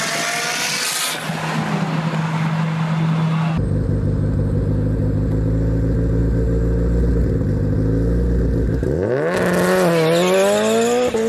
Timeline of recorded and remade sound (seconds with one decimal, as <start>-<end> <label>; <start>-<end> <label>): 0.0-11.3 recorded